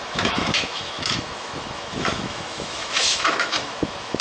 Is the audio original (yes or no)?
no